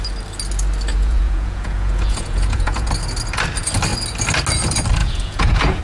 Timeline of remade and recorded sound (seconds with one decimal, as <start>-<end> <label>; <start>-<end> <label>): 0.0-0.9 recorded; 0.9-2.9 remade; 2.9-5.0 recorded; 5.0-5.8 remade